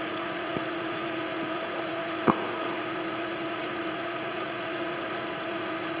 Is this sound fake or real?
fake